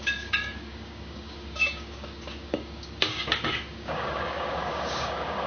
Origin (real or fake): fake